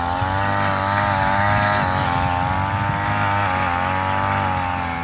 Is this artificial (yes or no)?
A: no